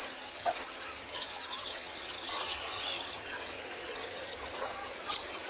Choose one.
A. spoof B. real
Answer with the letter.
A